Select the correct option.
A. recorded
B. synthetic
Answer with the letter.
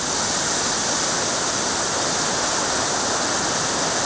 A